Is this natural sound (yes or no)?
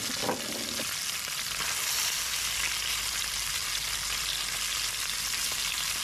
yes